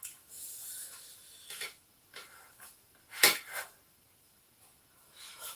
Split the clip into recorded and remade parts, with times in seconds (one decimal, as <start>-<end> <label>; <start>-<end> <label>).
0.0-5.6 remade